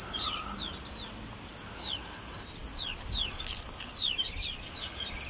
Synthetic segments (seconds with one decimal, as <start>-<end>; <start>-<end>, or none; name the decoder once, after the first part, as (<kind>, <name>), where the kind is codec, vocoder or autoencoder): none